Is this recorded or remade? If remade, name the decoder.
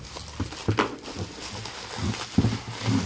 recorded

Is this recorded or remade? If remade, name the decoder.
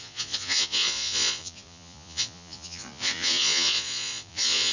remade, vocoder, Vocos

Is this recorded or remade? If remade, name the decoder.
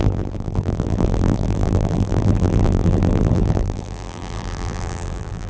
remade, vocoder, BigVGAN v2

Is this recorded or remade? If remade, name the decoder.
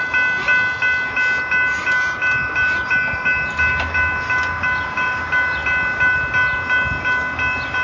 recorded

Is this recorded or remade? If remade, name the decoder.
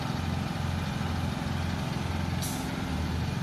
recorded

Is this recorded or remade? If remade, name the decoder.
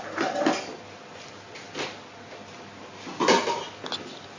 recorded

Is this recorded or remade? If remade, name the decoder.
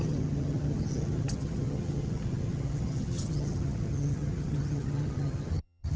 remade, vocoder, HiFi-GAN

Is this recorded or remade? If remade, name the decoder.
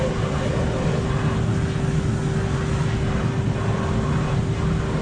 recorded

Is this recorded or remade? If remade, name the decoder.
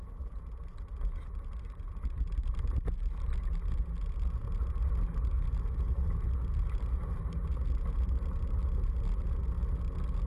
recorded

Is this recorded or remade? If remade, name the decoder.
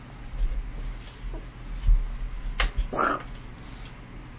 recorded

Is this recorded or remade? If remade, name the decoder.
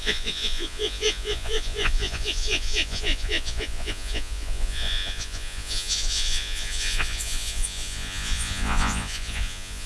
remade, vocoder, Vocos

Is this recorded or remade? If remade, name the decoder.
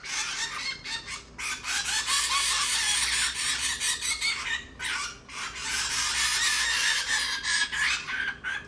recorded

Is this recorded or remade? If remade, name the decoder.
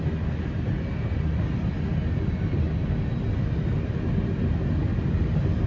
recorded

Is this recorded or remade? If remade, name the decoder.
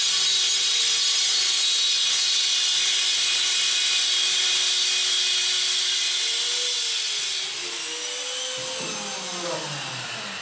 recorded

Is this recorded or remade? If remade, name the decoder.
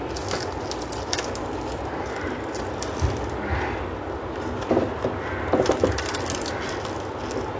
recorded